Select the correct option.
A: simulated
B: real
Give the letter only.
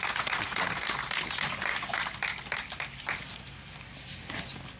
B